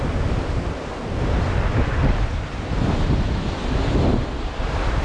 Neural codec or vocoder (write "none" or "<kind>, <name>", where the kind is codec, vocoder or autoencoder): none